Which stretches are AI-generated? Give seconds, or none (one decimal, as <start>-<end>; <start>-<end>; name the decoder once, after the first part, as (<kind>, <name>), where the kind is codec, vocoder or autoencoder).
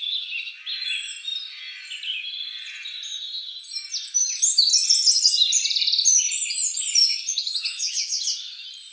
7.3-8.2 (autoencoder, DAC-VAE)